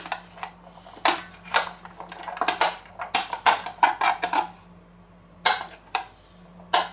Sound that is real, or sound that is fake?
real